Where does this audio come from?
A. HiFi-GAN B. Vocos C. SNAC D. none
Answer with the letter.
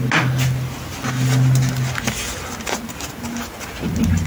D